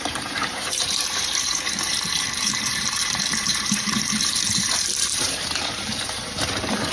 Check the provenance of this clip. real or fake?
fake